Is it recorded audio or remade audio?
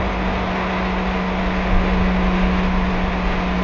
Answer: recorded